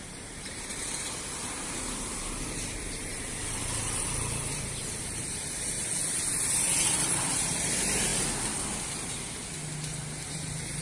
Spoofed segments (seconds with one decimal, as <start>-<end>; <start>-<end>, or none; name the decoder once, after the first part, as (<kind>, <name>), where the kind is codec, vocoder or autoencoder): 0.0-8.1 (vocoder, BigVGAN v2); 10.3-10.8